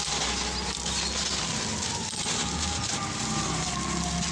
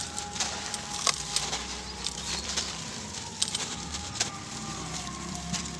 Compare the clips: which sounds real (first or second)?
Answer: first